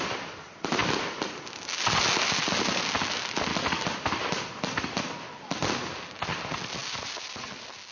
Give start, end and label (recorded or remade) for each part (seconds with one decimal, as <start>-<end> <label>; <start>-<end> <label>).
0.0-7.9 recorded